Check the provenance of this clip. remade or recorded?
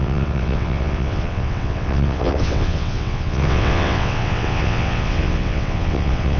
remade